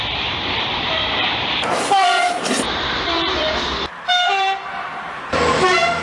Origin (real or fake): fake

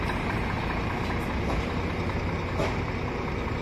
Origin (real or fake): real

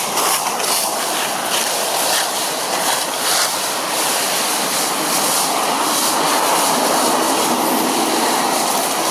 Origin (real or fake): real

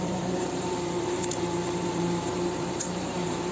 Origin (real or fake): fake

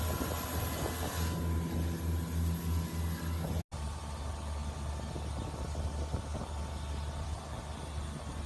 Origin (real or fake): real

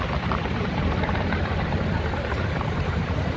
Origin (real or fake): fake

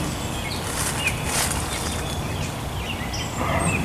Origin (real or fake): real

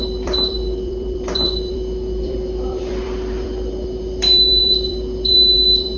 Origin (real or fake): fake